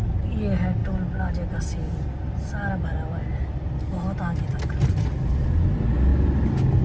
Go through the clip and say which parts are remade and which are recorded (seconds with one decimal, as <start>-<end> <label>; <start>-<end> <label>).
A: 0.0-6.8 recorded